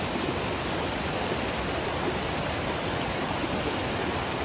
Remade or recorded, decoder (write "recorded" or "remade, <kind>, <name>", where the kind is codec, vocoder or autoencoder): recorded